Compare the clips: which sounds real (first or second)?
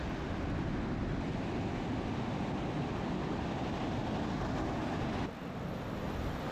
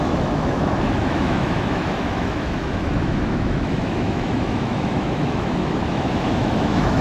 first